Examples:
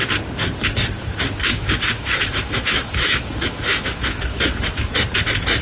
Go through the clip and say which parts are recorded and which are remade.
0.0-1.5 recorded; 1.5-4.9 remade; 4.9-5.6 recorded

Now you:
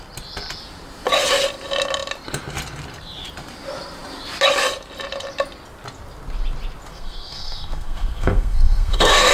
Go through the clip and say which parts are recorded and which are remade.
0.0-6.9 recorded; 6.9-9.3 remade

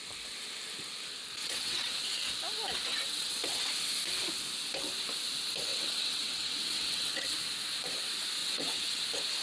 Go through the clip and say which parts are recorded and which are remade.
0.0-1.4 recorded; 1.4-1.9 remade; 1.9-2.9 recorded; 2.9-3.7 remade; 3.7-5.7 recorded; 5.7-7.3 remade; 7.3-8.4 recorded; 8.4-9.0 remade; 9.0-9.4 recorded

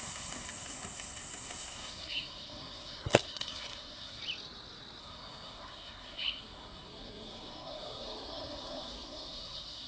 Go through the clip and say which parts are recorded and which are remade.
0.0-4.2 remade; 4.2-5.0 recorded; 5.0-9.9 remade

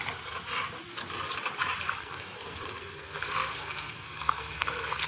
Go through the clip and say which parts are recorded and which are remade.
0.0-2.0 recorded; 2.0-5.1 remade

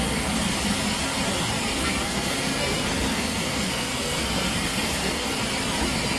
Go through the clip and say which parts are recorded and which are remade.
0.0-1.6 recorded; 1.6-5.3 remade; 5.3-6.2 recorded